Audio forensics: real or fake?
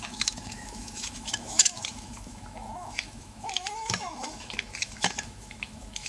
fake